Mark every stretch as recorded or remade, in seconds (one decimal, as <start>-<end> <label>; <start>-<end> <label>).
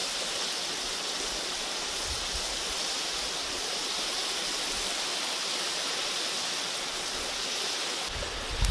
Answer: 0.0-8.7 recorded